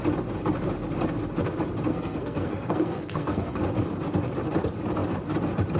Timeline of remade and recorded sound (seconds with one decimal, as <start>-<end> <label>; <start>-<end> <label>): 0.0-1.9 recorded; 1.9-3.6 remade; 3.6-5.8 recorded